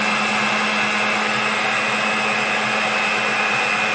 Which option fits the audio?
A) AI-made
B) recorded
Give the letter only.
B